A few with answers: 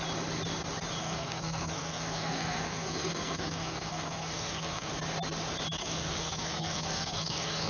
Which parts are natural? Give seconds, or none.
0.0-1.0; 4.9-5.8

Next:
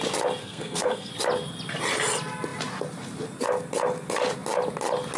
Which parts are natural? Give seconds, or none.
0.0-0.4; 1.1-5.2

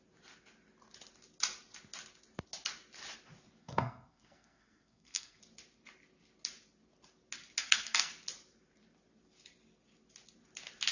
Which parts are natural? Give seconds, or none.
0.0-3.6; 5.4-7.6; 8.1-10.9

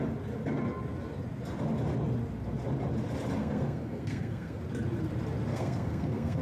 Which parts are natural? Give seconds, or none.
0.0-3.4; 4.6-5.5

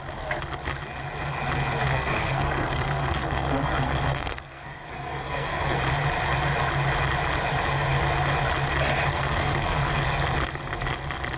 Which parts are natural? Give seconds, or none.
0.0-1.9; 5.8-9.1; 10.0-11.4

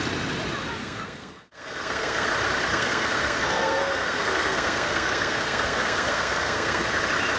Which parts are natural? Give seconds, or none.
0.0-0.8; 2.3-2.7; 7.0-7.4